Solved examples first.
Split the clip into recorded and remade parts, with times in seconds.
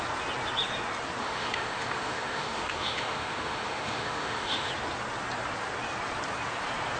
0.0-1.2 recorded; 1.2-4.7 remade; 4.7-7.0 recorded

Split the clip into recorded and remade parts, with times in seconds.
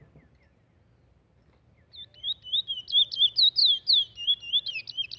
0.0-5.2 recorded